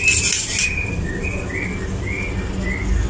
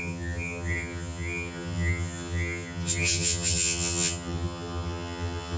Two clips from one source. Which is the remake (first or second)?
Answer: second